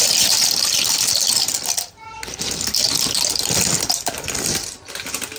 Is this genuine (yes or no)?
yes